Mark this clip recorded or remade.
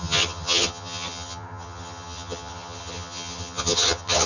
remade